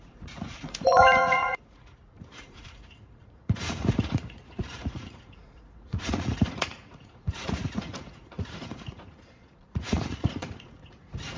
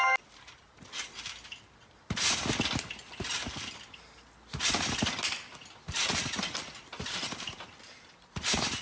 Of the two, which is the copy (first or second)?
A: first